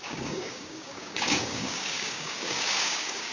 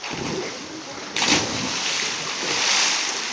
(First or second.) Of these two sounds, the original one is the second